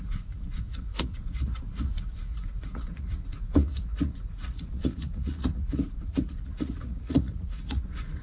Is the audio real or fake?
fake